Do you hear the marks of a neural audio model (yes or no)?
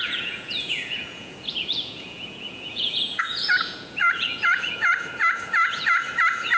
yes